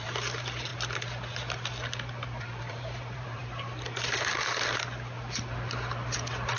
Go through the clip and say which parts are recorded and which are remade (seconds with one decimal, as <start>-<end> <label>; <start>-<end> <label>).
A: 0.0-0.7 remade; 0.7-2.4 recorded; 2.4-3.4 remade; 3.4-6.6 recorded